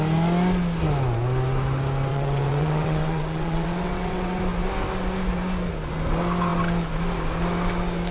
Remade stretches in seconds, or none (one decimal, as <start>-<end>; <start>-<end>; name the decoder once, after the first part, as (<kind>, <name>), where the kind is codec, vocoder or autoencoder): 2.1-4.4 (vocoder, WaveNeXt)

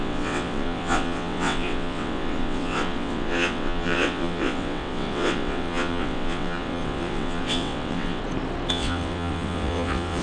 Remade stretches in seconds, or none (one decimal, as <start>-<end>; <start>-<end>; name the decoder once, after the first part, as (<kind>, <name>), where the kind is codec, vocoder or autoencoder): 0.0-8.2 (vocoder, WaveNeXt); 8.7-10.2

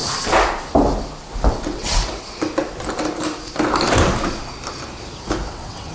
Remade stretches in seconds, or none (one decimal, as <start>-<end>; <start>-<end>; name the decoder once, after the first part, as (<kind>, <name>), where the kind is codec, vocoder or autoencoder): 1.5-2.0 (vocoder, WaveNeXt); 5.5-5.9

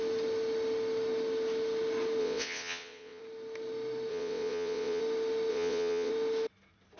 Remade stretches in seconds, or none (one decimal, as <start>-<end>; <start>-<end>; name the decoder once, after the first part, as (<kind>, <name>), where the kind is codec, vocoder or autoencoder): 2.2-3.2 (vocoder, WaveNeXt); 4.1-5.0; 5.5-6.1

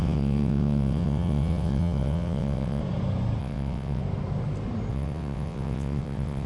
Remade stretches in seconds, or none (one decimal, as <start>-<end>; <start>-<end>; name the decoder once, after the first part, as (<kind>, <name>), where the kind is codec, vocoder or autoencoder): 0.0-2.8 (vocoder, WaveNeXt); 3.4-4.0; 4.9-6.5

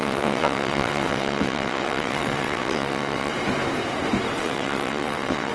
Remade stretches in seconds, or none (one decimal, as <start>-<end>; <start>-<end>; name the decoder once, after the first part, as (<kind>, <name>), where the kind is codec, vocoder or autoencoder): 0.0-3.3 (vocoder, WaveNeXt); 4.4-5.5

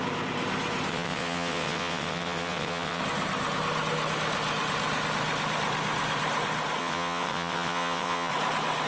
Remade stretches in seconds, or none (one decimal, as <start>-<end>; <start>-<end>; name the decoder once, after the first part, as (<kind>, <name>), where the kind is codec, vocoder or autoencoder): 0.9-3.0 (vocoder, WaveNeXt); 6.8-8.3

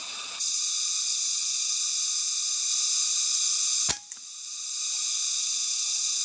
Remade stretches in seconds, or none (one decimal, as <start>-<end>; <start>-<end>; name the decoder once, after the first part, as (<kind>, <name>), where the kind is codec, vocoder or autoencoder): 0.0-0.6 (vocoder, WaveNeXt); 1.1-1.8; 5.4-6.2